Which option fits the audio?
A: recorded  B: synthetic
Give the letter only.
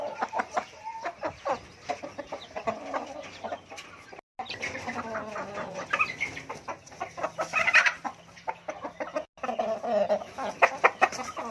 A